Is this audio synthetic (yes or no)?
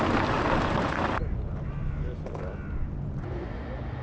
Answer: no